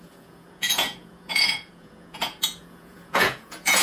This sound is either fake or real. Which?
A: fake